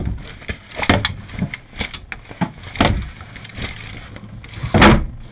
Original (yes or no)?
yes